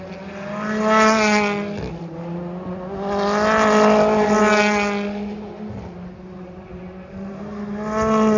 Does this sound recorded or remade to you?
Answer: recorded